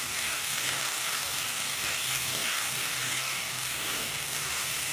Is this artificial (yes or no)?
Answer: yes